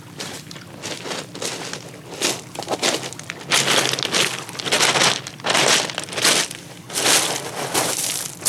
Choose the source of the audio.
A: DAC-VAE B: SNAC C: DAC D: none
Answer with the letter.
D